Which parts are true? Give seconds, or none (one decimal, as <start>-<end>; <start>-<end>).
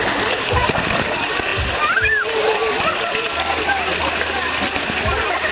0.0-5.5